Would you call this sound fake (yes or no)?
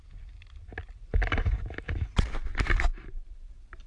no